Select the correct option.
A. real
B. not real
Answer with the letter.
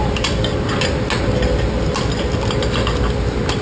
A